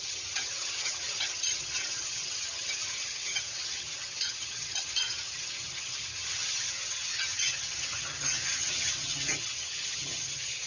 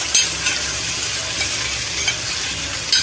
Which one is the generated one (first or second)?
first